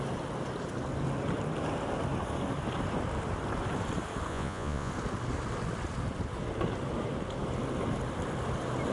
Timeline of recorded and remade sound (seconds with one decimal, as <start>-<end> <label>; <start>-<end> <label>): 0.0-4.3 recorded; 4.3-4.9 remade; 4.9-8.9 recorded